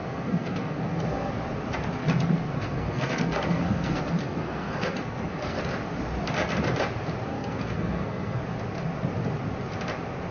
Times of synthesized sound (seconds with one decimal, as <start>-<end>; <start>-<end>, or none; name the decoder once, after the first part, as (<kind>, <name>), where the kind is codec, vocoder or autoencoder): 0.0-1.3 (codec, SNAC); 2.0-5.6; 7.3-8.4